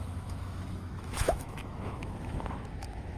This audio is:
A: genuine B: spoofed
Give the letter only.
B